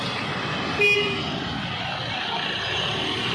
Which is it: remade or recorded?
recorded